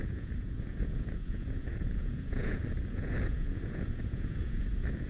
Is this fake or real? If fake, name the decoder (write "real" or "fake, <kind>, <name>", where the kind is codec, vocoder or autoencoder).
fake, vocoder, Vocos